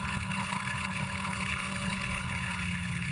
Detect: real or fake fake